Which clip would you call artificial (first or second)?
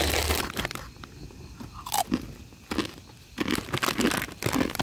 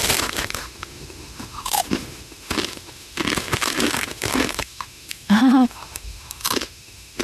second